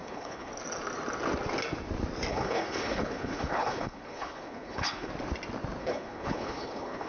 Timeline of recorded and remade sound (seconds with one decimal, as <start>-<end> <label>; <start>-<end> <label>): 0.0-0.5 remade; 0.5-2.3 recorded; 2.3-5.1 remade; 5.1-5.8 recorded; 5.8-7.1 remade